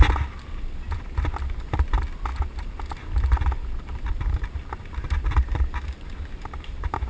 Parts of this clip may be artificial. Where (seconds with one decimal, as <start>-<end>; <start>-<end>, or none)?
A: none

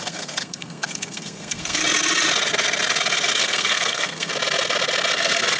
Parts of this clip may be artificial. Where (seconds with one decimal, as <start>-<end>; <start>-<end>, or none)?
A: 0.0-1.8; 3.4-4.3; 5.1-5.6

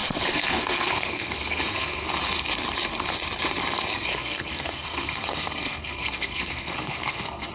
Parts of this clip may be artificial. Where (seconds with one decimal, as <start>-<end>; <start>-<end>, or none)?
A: 0.0-2.1; 3.9-7.5

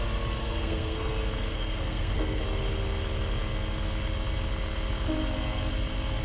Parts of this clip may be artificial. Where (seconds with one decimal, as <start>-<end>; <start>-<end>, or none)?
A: 0.4-1.1; 1.5-2.4

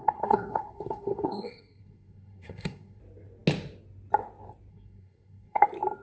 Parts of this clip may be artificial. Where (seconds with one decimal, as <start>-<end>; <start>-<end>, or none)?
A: 0.0-3.0; 4.7-5.6

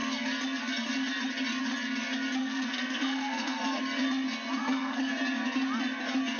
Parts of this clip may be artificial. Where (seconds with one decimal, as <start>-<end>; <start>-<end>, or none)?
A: 2.4-3.8; 4.6-5.1

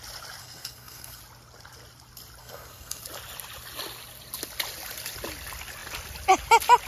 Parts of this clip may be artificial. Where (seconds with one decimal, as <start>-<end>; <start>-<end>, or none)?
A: 0.4-1.2; 2.4-3.0